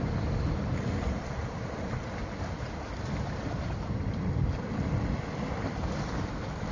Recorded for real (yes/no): no